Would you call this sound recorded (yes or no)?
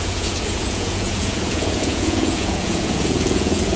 no